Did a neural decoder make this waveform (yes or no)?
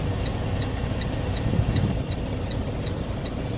no